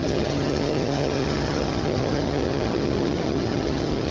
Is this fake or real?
fake